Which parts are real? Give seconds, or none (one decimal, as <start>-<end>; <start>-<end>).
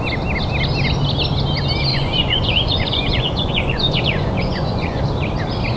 0.0-1.9; 5.0-5.8